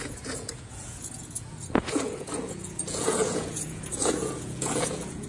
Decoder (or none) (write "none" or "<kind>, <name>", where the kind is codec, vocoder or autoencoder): vocoder, Vocos